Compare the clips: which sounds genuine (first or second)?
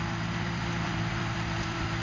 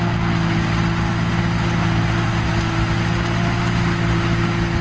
second